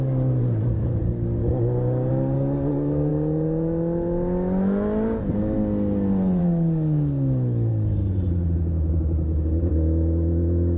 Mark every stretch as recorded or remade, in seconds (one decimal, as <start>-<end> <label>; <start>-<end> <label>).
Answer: 0.0-1.4 remade; 1.4-2.1 recorded; 2.1-3.1 remade; 3.1-6.4 recorded; 6.4-7.7 remade; 7.7-10.8 recorded